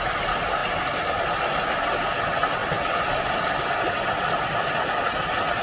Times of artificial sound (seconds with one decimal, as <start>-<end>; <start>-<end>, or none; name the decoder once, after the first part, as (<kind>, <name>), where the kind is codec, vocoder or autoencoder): none